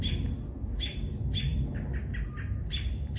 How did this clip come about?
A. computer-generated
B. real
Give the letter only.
B